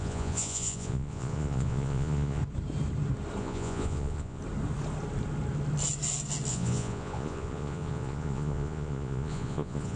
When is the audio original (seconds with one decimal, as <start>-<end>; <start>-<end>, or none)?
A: 2.4-3.4; 4.4-6.5